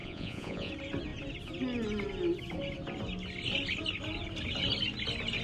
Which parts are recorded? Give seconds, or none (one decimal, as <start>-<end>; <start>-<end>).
0.7-5.4